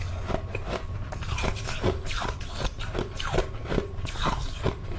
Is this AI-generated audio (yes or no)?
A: no